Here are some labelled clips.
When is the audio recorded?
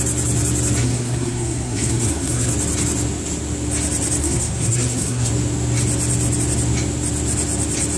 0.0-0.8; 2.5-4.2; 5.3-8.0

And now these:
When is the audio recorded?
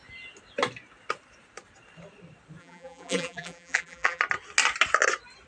0.0-2.6; 4.2-5.5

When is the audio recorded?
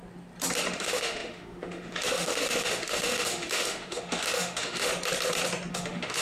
0.0-0.7; 4.9-5.7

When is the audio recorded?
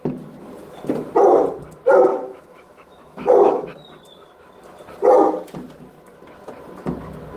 0.0-2.1; 3.7-7.4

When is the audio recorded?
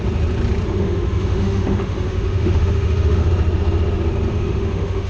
0.0-0.8; 3.3-4.3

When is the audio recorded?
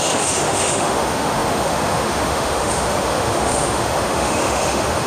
none